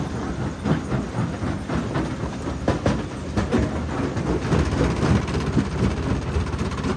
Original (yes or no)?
yes